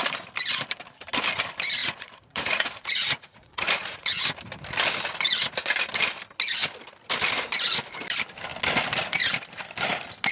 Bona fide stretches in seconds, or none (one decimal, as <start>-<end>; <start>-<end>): 0.0-1.8; 4.2-10.3